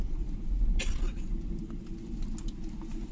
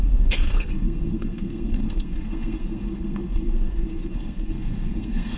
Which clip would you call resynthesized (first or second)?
second